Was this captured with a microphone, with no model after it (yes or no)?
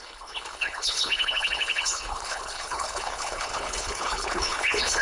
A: no